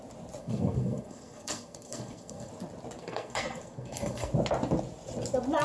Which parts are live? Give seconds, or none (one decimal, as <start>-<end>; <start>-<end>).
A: 0.0-0.4; 2.5-3.0; 4.3-5.6